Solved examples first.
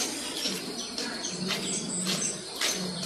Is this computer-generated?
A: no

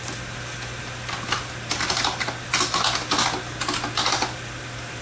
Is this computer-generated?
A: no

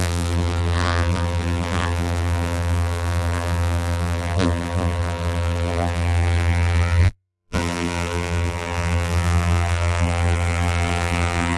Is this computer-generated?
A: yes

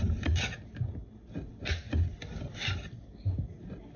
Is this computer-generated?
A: no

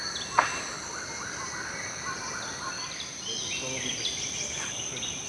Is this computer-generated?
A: no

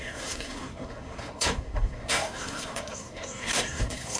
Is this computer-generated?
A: yes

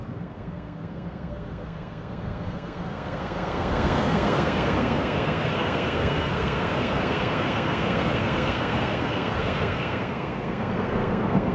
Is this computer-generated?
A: yes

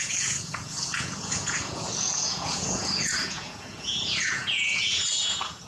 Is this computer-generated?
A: yes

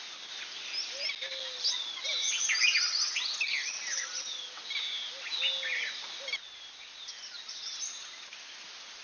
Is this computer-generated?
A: no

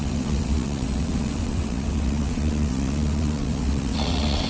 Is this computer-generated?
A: yes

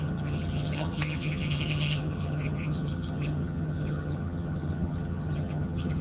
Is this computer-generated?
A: yes